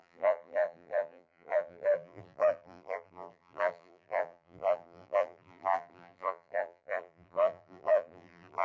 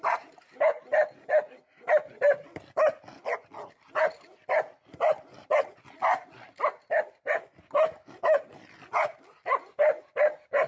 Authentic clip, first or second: second